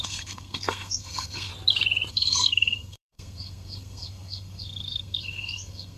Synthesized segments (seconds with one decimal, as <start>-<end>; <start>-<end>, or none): 0.0-1.5; 2.1-6.0